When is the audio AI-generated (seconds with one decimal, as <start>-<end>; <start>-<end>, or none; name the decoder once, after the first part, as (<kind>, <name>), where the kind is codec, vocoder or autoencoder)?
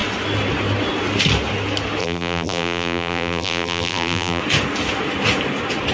2.0-4.4 (vocoder, BigVGAN v2)